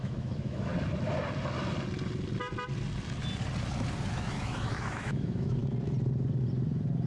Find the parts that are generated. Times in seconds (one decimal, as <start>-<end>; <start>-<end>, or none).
0.0-0.7; 4.1-5.6